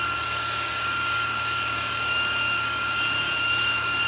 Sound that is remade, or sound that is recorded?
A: remade